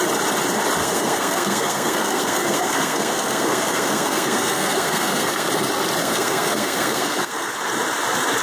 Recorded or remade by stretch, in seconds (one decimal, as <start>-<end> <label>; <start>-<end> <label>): 0.0-0.8 recorded; 0.8-5.5 remade; 5.5-6.0 recorded; 6.0-7.5 remade; 7.5-8.4 recorded

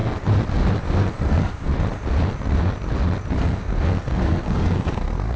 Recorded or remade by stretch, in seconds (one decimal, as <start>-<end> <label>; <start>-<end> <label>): 0.0-0.8 recorded; 0.8-1.7 remade; 1.7-3.3 recorded; 3.3-5.4 remade

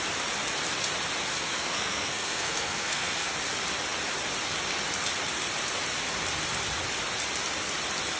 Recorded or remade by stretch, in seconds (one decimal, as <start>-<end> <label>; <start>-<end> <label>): 0.0-1.3 recorded; 1.3-3.3 remade; 3.3-8.2 recorded

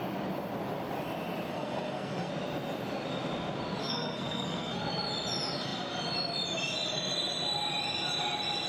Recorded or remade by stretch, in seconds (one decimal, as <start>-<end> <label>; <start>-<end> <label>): 0.0-1.5 recorded; 1.5-2.3 remade; 2.3-3.8 recorded; 3.8-4.8 remade; 4.8-8.7 recorded

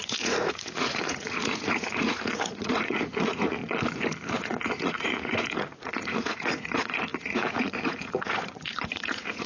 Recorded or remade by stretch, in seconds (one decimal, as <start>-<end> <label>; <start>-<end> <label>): 0.0-3.6 remade; 3.6-4.4 recorded; 4.4-9.5 remade